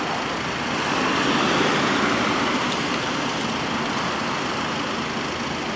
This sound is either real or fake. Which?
real